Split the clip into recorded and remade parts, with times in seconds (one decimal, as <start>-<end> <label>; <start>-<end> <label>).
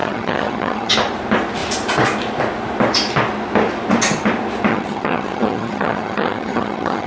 0.0-0.9 remade; 0.9-4.7 recorded; 4.7-7.1 remade